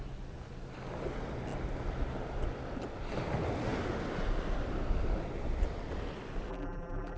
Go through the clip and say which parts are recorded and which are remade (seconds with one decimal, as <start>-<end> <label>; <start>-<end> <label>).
0.0-6.5 recorded; 6.5-7.2 remade